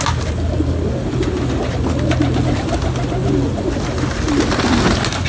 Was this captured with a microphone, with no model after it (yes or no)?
yes